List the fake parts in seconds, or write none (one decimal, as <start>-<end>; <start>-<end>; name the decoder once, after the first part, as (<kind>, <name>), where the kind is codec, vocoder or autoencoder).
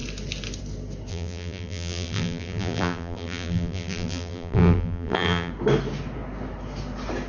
1.1-5.5 (vocoder, BigVGAN v2)